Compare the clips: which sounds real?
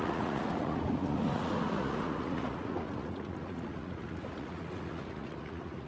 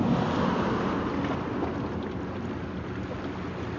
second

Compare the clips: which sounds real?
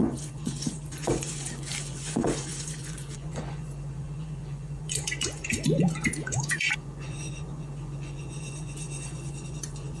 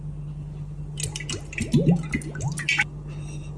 second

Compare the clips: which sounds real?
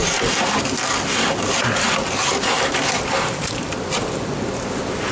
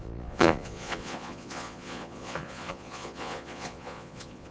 first